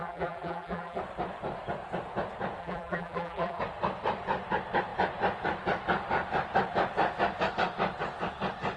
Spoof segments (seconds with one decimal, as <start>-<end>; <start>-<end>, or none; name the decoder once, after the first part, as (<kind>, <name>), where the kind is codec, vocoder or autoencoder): 0.0-1.0 (vocoder, BigVGAN v2); 2.6-3.6